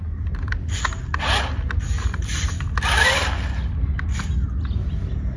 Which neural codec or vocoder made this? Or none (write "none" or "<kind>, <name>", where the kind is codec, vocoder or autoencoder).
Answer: none